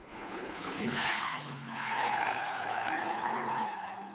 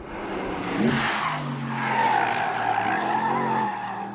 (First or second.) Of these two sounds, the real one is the second